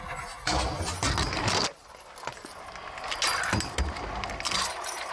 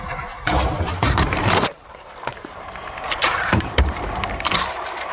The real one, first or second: first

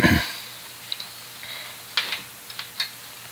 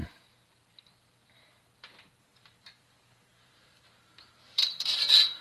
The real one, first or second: first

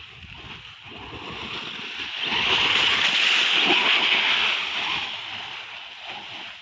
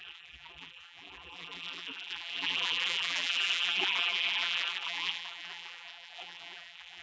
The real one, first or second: first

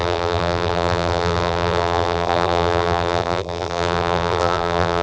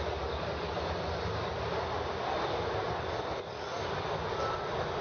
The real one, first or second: second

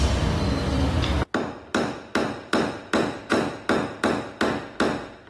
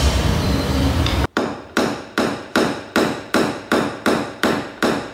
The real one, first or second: first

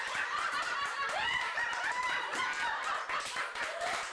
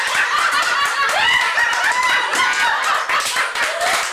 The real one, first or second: second